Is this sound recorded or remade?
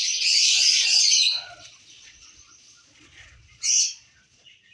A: remade